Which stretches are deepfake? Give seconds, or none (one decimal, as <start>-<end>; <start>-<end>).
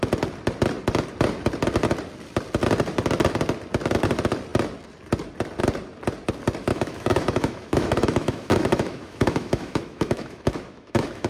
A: 6.7-11.3